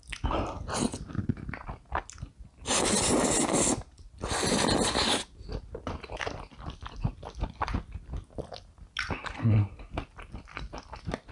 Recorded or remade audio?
recorded